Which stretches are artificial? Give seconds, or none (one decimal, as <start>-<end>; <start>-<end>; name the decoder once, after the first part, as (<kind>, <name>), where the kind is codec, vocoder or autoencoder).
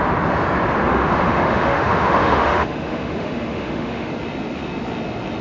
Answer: 0.9-4.1 (autoencoder, DAC-VAE)